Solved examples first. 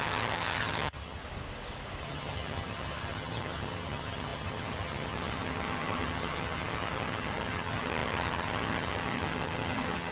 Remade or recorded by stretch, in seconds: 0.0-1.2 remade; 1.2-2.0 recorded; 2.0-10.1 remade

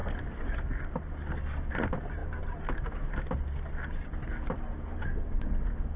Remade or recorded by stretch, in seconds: 0.0-6.0 recorded

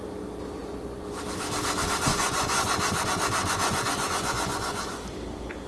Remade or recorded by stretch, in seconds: 0.0-0.6 recorded; 0.6-1.2 remade; 1.2-2.1 recorded; 2.1-2.7 remade; 2.7-3.4 recorded; 3.4-5.0 remade; 5.0-5.7 recorded

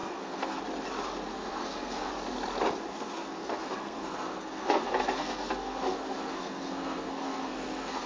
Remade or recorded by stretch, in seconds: 0.0-0.6 remade; 0.6-1.3 recorded; 1.3-2.1 remade; 2.1-2.9 recorded; 2.9-8.1 remade

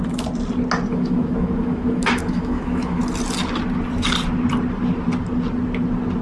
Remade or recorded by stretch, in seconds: 0.0-0.9 recorded; 0.9-3.0 remade; 3.0-6.2 recorded